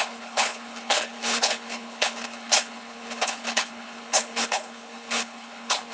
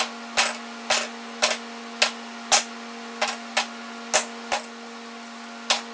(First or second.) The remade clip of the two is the first